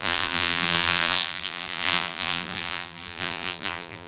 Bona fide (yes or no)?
no